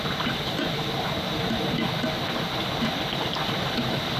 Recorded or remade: recorded